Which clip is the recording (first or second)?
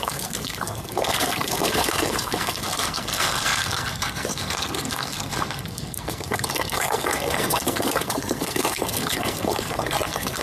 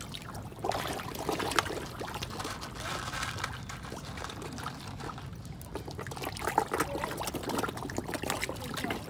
second